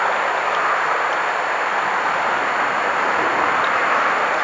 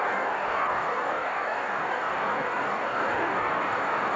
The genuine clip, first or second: first